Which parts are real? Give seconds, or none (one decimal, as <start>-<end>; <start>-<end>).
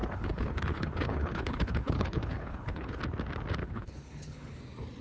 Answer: 3.0-3.6; 4.6-5.0